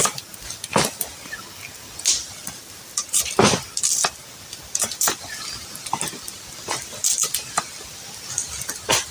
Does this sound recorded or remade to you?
recorded